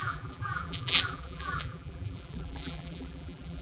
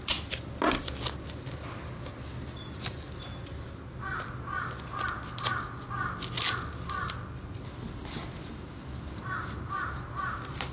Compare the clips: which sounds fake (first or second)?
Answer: first